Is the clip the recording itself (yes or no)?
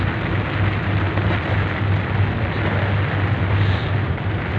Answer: yes